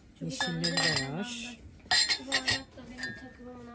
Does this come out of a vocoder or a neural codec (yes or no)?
no